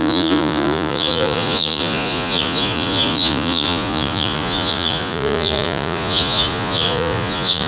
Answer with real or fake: fake